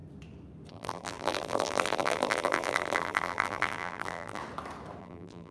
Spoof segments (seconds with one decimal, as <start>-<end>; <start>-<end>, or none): 0.7-4.4; 5.0-5.5